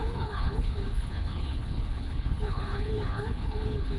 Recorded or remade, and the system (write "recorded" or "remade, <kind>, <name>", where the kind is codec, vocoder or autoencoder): remade, codec, HILCodec